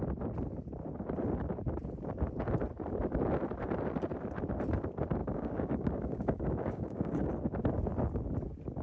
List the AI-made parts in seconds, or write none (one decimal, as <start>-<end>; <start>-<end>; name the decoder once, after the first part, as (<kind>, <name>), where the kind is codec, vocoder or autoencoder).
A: 5.2-7.3 (codec, DAC)